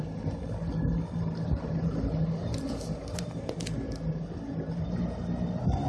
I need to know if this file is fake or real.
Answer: real